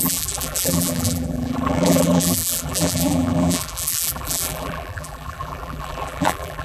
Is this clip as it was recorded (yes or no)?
no